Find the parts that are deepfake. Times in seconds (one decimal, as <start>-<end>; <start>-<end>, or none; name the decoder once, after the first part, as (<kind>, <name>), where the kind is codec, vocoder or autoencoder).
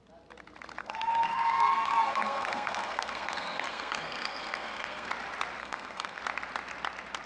0.8-5.1 (codec, SNAC); 5.6-6.2